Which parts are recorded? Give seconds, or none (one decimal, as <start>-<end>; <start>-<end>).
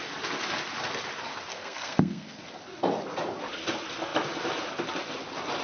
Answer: 0.0-1.5; 2.4-5.6